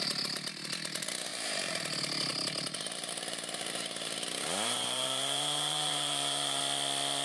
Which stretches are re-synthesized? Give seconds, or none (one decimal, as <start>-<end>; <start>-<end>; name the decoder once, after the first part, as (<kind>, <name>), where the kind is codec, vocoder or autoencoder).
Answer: 1.3-1.8 (vocoder, BigVGAN v2); 2.3-6.6